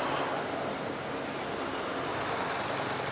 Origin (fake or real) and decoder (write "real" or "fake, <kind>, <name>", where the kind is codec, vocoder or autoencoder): real